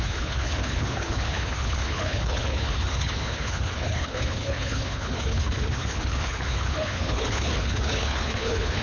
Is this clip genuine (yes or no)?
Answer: no